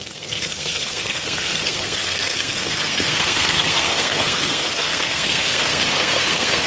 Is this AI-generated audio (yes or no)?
yes